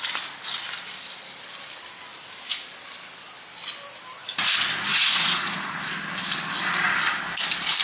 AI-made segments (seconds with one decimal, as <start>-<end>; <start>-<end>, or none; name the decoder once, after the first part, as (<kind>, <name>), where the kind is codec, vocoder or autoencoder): 4.9-5.8 (vocoder, Vocos)